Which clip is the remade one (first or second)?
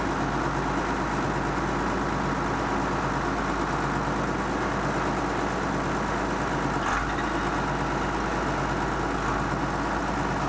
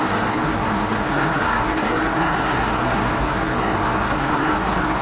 second